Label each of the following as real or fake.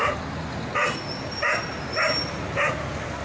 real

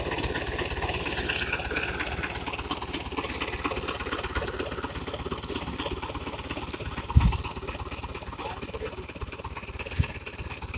real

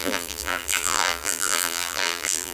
fake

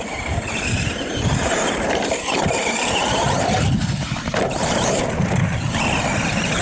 fake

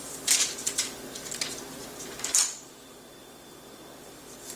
fake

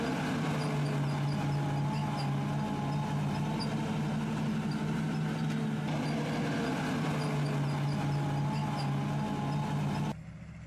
real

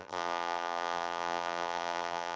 fake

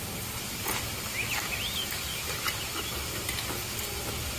real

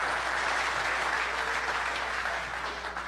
real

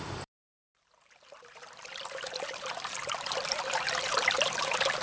fake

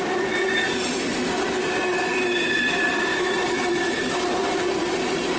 fake